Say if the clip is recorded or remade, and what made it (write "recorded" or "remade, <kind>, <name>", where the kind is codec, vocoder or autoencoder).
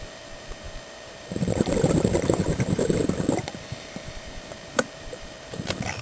remade, vocoder, BigVGAN v2